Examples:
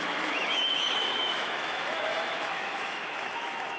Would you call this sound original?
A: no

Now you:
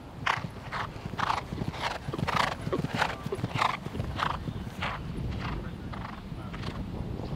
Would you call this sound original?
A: yes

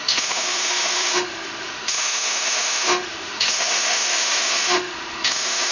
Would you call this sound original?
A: no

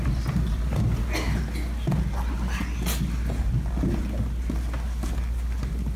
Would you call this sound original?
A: yes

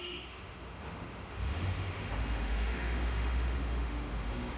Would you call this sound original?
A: no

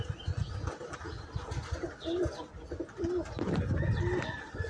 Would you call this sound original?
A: yes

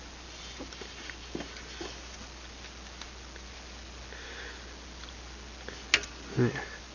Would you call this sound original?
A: yes